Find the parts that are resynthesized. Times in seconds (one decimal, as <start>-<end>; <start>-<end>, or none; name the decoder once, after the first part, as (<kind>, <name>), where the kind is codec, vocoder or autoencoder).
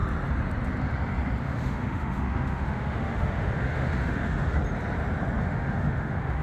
1.4-4.6 (autoencoder, DAC-VAE); 5.4-6.4